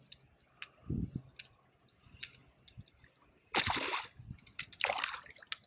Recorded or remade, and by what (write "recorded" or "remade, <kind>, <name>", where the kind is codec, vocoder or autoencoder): recorded